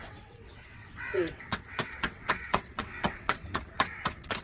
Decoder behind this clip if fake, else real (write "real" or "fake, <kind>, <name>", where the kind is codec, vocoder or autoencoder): fake, vocoder, WaveNeXt